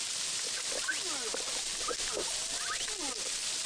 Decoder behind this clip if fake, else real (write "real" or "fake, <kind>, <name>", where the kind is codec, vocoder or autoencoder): real